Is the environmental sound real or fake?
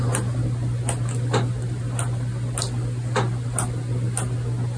real